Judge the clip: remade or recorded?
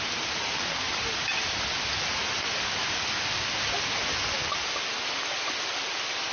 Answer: recorded